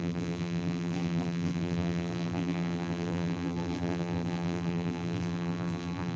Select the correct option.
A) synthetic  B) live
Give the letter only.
A